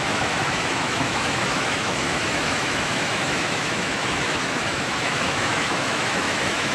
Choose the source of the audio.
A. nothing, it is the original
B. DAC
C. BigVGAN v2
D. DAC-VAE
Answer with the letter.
D